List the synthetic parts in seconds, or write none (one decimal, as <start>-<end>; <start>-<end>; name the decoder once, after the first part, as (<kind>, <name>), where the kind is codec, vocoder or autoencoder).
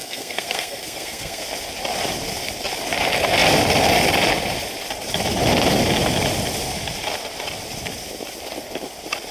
0.0-1.4 (codec, SNAC)